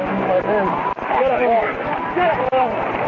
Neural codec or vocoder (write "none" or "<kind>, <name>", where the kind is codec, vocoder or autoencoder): none